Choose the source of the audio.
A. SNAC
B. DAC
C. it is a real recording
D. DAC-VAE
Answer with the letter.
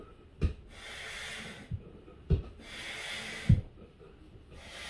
C